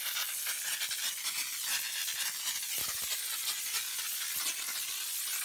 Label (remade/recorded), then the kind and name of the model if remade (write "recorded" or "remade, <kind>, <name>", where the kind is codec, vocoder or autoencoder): recorded